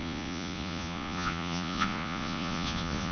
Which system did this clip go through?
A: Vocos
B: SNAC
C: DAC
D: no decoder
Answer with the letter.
A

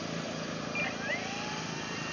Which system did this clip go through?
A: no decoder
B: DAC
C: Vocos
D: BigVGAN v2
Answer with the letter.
A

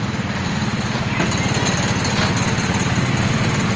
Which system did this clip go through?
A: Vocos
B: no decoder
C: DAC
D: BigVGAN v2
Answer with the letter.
B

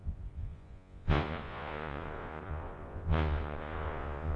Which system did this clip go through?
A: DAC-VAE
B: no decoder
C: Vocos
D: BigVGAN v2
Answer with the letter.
C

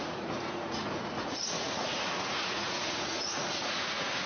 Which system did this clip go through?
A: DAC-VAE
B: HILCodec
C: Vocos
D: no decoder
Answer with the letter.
C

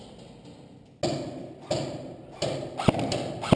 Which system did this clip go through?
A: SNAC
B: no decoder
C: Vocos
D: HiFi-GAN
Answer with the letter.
B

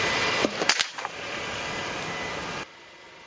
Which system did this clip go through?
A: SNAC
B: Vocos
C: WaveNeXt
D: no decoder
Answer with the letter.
D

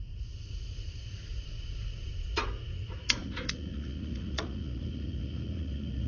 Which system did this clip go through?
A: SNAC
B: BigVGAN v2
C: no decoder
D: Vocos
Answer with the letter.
D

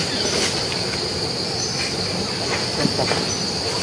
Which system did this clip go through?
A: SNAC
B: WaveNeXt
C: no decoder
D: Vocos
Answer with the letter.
C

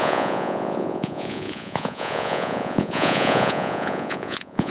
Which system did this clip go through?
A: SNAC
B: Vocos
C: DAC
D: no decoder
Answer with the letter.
B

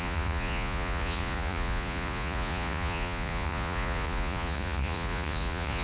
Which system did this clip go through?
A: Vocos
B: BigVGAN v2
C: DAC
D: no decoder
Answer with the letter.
A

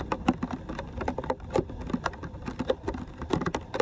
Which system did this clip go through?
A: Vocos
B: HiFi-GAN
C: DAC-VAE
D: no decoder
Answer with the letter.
D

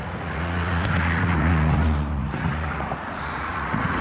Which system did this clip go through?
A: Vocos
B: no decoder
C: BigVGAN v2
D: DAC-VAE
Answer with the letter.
A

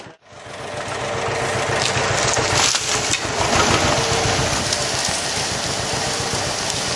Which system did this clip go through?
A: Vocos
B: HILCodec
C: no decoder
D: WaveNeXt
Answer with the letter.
C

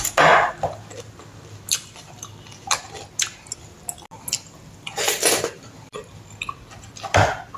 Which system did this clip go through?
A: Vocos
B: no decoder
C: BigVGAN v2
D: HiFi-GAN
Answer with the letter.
B